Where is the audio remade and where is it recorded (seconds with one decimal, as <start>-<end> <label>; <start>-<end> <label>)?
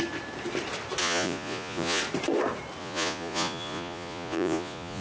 0.0-1.0 recorded; 1.0-2.0 remade; 2.0-2.8 recorded; 2.8-5.0 remade